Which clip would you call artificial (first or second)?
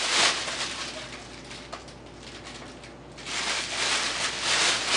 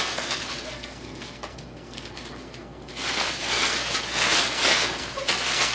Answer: second